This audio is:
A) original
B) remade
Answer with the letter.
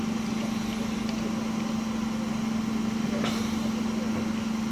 A